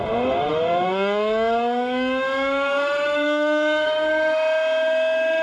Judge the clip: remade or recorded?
remade